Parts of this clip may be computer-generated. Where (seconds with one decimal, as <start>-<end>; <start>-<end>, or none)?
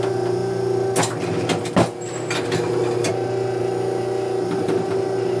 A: none